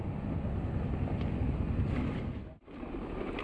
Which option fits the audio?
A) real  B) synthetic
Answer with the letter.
A